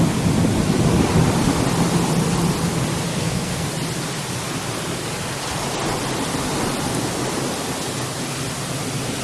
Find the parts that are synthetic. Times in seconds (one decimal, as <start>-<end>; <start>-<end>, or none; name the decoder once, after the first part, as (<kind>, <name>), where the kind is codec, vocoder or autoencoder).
3.1-3.7 (codec, SNAC)